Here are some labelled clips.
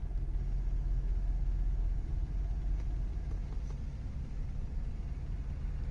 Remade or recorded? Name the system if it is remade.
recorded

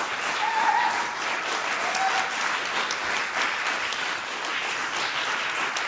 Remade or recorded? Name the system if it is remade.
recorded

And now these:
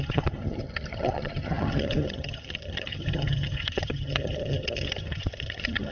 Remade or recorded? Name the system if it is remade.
remade, vocoder, HiFi-GAN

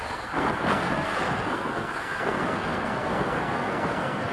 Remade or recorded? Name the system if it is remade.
remade, codec, SNAC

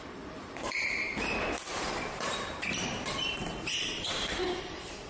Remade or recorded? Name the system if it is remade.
remade, vocoder, BigVGAN v2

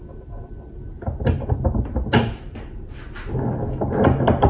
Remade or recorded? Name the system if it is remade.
recorded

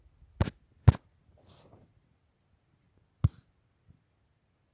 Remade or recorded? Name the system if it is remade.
recorded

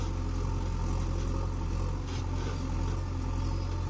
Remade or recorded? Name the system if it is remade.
recorded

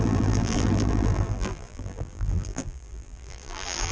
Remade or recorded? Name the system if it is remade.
remade, vocoder, BigVGAN v2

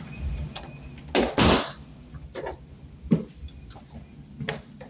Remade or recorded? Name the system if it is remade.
recorded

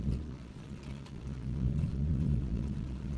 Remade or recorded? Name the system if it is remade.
remade, vocoder, Vocos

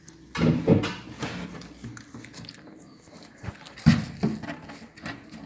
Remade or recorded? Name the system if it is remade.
recorded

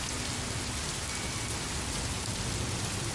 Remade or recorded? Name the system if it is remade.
recorded